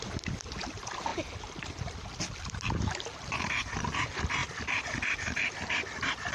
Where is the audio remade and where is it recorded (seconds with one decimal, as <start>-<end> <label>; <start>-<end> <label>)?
0.0-6.3 recorded